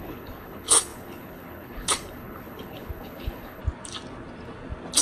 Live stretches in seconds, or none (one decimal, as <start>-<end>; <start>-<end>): 3.6-5.0